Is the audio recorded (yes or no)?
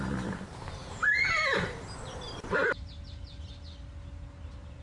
yes